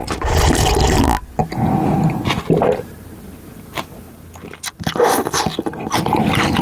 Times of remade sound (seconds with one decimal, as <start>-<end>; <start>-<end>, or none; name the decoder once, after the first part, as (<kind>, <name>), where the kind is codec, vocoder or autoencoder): none